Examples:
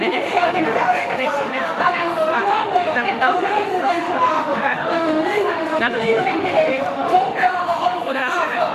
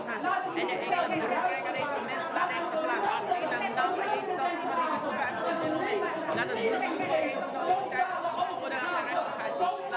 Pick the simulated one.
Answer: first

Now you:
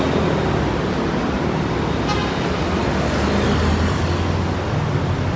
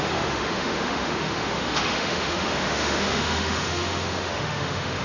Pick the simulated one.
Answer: second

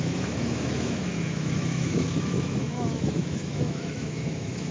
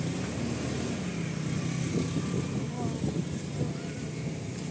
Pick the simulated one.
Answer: first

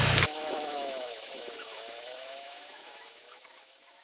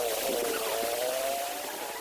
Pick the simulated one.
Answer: first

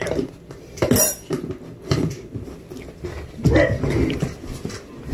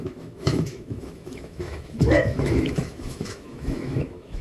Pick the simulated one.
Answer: second